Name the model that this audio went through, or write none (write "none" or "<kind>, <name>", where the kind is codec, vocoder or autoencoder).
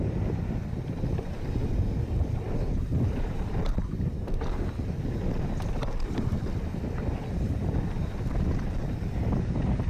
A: none